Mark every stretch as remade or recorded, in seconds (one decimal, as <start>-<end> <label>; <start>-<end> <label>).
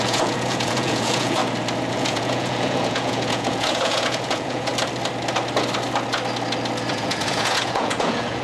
0.0-1.4 remade; 1.4-1.9 recorded; 1.9-4.7 remade; 4.7-6.9 recorded; 6.9-8.4 remade